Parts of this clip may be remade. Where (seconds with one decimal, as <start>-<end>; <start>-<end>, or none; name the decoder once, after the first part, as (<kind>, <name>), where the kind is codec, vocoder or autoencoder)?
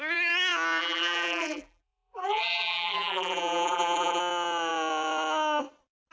0.8-4.2 (vocoder, BigVGAN v2)